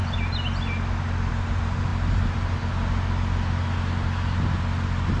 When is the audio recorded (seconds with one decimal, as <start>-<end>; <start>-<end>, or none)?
0.0-5.2